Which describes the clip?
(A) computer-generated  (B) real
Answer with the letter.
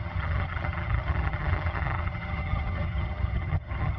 A